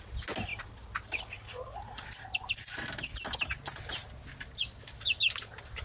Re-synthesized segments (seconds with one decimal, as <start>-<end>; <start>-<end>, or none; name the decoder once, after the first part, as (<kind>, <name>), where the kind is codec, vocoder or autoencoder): none